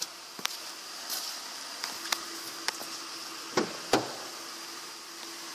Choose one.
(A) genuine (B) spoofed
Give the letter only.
A